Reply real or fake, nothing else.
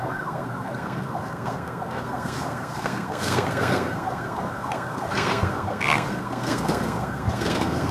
fake